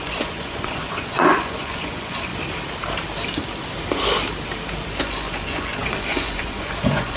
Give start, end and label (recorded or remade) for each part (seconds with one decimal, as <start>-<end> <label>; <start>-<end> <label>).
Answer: 0.0-2.3 remade; 2.3-5.0 recorded; 5.0-7.2 remade